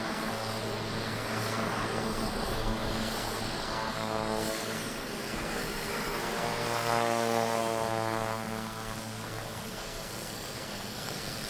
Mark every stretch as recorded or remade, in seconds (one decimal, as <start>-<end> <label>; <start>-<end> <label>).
0.0-11.5 remade